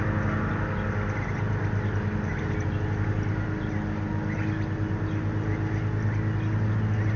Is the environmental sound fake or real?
real